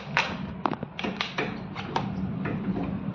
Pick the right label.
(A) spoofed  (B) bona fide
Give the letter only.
B